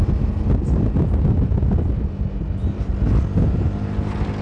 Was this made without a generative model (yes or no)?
yes